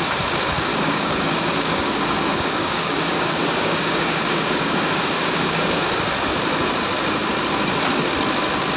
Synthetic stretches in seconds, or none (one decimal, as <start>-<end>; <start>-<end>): 0.7-5.8